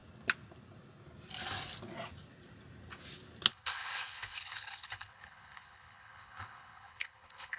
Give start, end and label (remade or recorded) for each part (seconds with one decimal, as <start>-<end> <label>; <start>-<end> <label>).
0.0-3.5 recorded; 3.5-7.6 remade